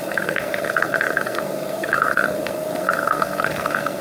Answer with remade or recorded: remade